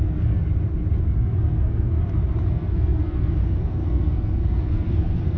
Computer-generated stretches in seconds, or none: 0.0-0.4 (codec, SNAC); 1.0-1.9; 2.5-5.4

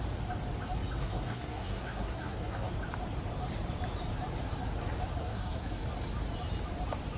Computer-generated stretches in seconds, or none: 1.0-2.7 (codec, SNAC); 5.2-5.8

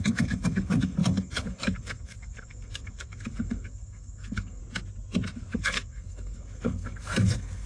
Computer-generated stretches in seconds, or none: 0.0-4.6 (codec, SNAC); 5.3-7.7